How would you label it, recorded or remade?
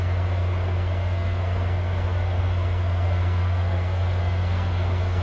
remade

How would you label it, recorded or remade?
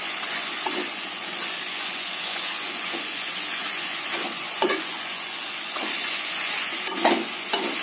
remade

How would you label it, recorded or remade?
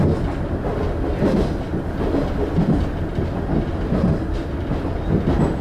recorded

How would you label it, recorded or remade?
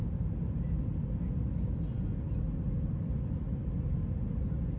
recorded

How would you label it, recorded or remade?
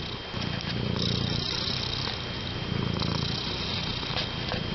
recorded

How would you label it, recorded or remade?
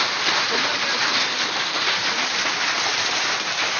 recorded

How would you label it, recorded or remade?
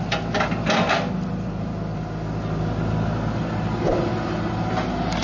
recorded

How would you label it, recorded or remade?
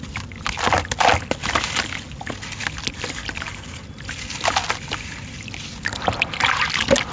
recorded